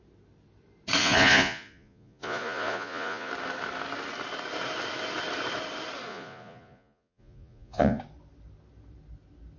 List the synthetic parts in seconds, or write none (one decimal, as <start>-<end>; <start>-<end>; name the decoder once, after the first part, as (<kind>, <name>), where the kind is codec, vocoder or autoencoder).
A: 1.0-3.3 (vocoder, Vocos); 6.1-8.0